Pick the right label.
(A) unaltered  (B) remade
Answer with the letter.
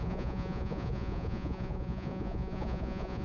B